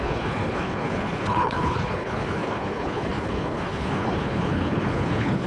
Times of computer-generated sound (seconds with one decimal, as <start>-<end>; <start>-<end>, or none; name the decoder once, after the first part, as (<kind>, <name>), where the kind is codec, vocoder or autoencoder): 0.0-5.5 (codec, HILCodec)